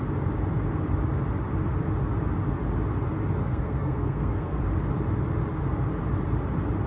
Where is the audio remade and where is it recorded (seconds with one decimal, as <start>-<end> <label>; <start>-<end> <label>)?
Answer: 0.0-3.4 recorded; 3.4-4.6 remade; 4.6-6.9 recorded